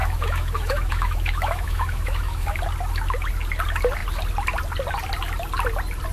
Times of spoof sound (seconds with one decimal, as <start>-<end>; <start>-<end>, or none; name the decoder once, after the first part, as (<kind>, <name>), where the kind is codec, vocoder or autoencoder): 0.0-2.6 (autoencoder, DAC-VAE)